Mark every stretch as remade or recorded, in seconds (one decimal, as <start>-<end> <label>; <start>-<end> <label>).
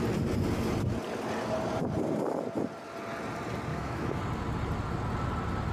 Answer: 0.0-3.7 recorded; 3.7-4.2 remade; 4.2-5.7 recorded